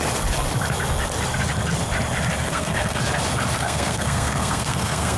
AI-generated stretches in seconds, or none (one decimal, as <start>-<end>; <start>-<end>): 2.4-3.0; 3.6-5.2